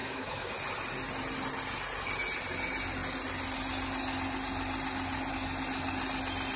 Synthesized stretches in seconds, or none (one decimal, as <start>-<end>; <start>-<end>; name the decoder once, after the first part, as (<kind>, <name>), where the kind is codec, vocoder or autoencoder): 0.0-0.5 (autoencoder, DAC-VAE)